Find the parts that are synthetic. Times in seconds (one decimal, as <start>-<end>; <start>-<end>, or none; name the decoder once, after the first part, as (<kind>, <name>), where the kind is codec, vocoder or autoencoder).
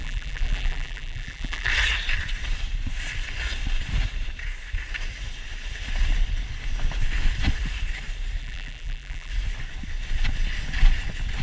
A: 0.0-1.7 (vocoder, BigVGAN v2); 8.4-9.3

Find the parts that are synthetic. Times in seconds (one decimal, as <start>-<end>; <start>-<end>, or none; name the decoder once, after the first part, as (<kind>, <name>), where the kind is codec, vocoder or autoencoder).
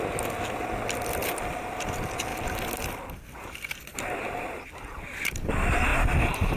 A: 2.3-5.5 (vocoder, BigVGAN v2); 5.9-6.6